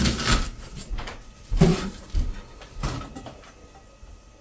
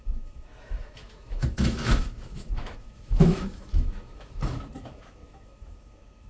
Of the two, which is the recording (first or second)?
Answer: first